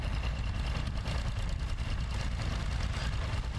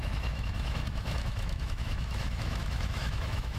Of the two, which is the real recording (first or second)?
first